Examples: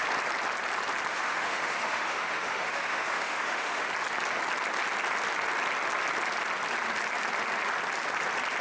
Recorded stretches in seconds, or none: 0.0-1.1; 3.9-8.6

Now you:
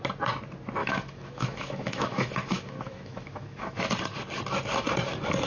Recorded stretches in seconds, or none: 0.0-0.8; 3.8-5.5

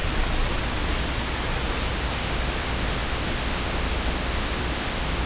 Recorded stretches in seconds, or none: 0.0-2.0

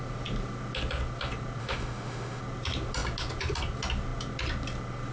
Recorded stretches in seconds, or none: 0.0-1.6; 2.4-5.1

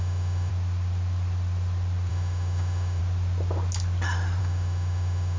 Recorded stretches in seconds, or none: 0.5-2.1; 3.0-4.4

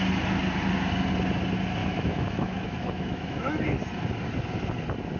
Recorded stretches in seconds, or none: 0.0-1.8; 3.6-5.2